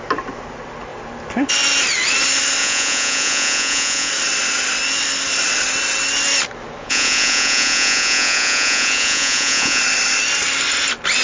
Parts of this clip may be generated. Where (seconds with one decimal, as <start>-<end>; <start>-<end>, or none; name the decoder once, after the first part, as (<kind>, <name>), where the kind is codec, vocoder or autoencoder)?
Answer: 2.6-4.1 (vocoder, Vocos); 6.8-9.8